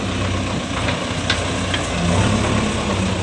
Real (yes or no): yes